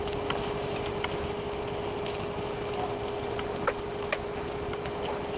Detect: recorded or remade recorded